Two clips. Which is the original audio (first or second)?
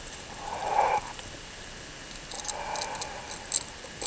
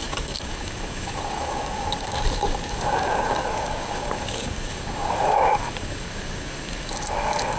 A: first